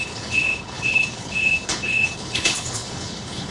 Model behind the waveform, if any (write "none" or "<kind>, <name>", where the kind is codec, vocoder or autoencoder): codec, HILCodec